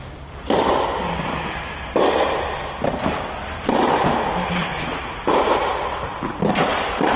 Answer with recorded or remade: remade